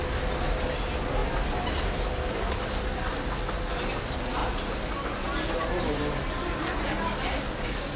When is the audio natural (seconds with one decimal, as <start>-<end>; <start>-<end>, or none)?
0.0-8.0

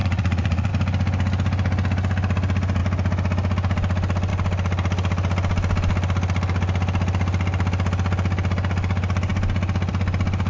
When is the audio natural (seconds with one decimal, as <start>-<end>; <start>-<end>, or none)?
0.7-10.5

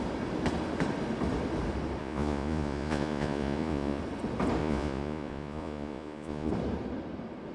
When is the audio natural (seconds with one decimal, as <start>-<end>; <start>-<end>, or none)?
0.0-2.0; 4.0-4.6; 6.5-7.5

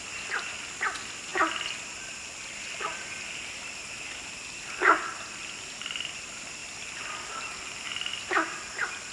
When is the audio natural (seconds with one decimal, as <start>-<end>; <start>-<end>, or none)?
0.0-9.1

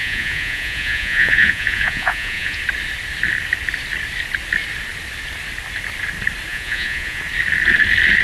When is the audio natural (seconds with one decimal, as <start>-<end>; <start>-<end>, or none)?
2.6-6.5; 7.2-8.2